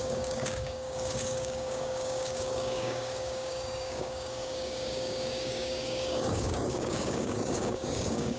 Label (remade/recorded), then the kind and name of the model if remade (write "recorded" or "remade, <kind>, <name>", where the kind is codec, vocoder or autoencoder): remade, codec, DAC